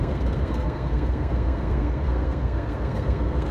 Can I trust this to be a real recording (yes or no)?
no